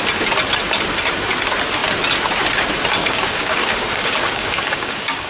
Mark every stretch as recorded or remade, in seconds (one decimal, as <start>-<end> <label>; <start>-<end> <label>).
0.0-3.0 recorded; 3.0-5.3 remade